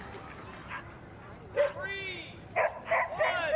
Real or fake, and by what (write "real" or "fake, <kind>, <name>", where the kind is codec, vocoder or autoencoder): real